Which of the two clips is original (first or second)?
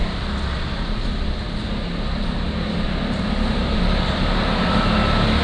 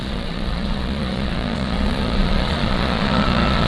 first